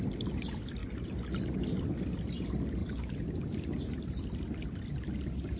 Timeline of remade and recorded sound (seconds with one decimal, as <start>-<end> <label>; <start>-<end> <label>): 0.0-2.8 recorded; 2.8-4.2 remade; 4.2-5.6 recorded